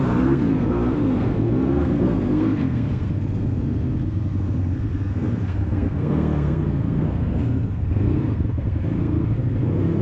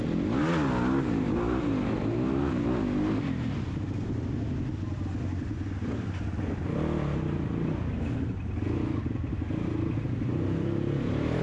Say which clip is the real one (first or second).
second